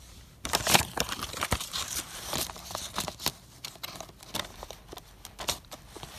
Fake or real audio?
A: fake